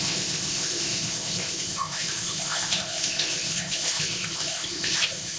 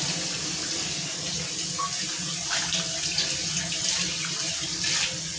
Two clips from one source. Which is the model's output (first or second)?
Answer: first